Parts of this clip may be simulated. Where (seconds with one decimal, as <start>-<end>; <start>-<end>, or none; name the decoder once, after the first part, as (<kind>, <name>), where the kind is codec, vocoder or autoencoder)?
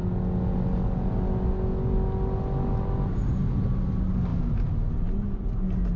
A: none